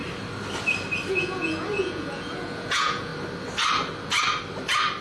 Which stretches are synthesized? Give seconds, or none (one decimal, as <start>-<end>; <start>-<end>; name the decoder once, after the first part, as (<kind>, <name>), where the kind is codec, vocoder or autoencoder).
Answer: 1.1-3.1 (vocoder, Vocos)